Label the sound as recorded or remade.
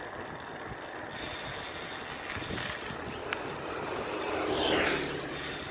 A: recorded